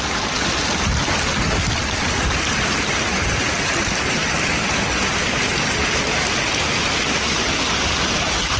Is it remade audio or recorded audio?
recorded